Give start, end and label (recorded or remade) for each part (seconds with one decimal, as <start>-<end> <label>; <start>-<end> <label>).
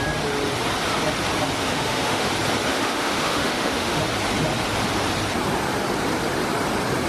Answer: 0.0-1.6 recorded; 1.6-2.3 remade; 2.3-2.7 recorded; 2.7-4.0 remade; 4.0-7.1 recorded